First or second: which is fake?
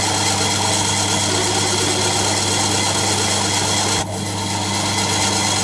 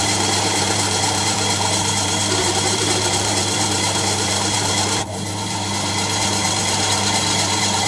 second